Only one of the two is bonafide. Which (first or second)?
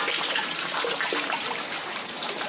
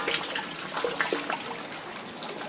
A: second